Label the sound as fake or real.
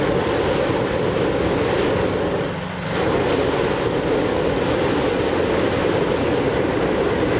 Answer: real